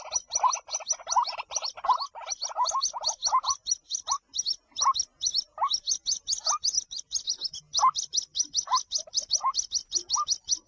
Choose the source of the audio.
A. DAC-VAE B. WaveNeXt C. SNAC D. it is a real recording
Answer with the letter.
D